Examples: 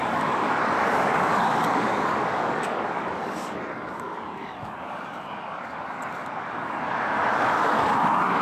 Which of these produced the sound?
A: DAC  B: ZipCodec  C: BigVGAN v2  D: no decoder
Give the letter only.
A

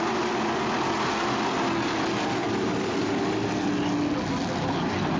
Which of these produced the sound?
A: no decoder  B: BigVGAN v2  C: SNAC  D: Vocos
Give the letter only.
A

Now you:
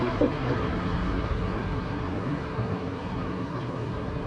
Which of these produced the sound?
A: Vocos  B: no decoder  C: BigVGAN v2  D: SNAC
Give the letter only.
D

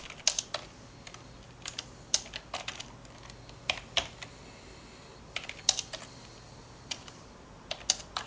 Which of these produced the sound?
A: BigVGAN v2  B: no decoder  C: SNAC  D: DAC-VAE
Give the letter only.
B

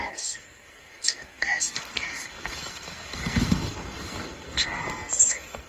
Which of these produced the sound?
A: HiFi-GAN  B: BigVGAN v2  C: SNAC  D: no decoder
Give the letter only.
C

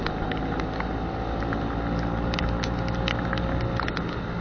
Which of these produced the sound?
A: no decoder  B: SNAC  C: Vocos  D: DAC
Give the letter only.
A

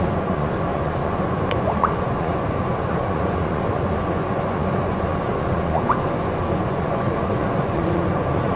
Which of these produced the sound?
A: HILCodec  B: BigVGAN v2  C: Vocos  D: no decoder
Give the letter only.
C